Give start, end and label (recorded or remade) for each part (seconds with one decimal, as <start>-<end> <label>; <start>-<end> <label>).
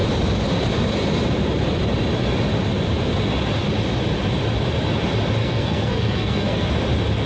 0.0-5.4 recorded; 5.4-6.7 remade; 6.7-7.3 recorded